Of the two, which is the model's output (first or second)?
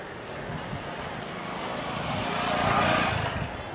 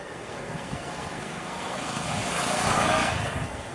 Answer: second